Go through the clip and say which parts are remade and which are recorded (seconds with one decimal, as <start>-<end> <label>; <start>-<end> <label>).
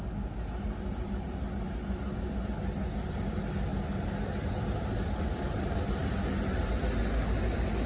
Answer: 0.0-7.9 recorded